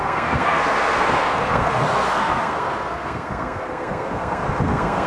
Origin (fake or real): fake